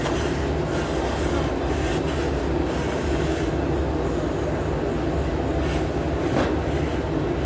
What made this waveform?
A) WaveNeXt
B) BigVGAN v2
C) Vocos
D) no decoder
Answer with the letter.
D